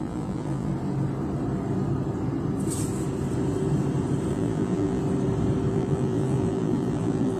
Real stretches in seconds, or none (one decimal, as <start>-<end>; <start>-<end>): 0.7-4.3; 5.0-5.7